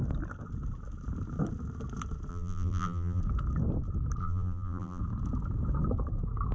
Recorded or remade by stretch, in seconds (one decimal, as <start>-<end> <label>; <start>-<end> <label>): 0.0-2.3 recorded; 2.3-3.2 remade; 3.2-4.2 recorded; 4.2-5.0 remade; 5.0-6.5 recorded